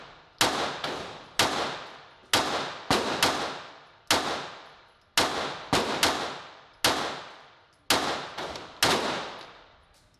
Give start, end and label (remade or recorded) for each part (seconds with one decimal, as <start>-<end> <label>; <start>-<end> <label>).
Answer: 0.0-10.2 recorded